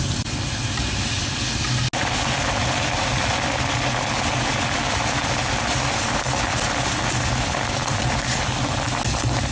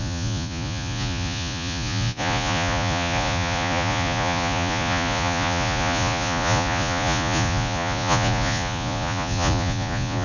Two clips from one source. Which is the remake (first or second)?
second